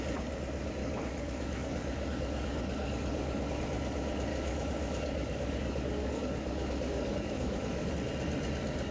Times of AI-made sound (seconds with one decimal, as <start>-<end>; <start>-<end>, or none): 0.8-3.5; 4.3-7.9